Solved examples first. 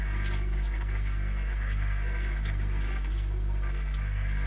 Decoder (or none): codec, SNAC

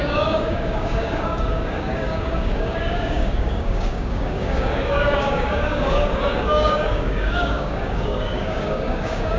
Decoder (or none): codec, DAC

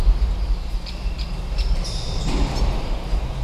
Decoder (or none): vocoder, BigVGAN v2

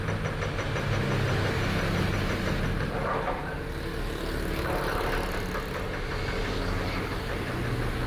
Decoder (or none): none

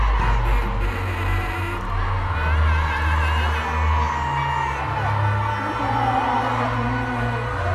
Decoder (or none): none